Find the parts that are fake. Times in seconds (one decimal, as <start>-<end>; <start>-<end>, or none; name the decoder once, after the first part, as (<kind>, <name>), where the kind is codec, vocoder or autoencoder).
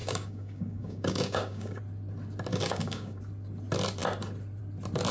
0.0-1.8 (codec, DAC); 2.5-3.2